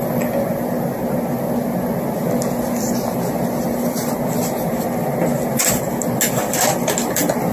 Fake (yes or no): no